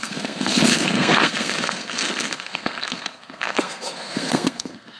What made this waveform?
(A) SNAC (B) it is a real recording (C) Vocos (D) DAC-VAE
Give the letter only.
A